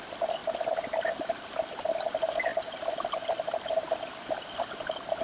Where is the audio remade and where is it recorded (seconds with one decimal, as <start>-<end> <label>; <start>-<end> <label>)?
0.0-0.4 recorded; 0.4-2.0 remade; 2.0-5.2 recorded